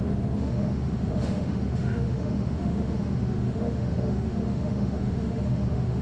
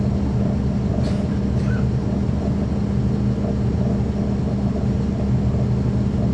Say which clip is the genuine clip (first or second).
second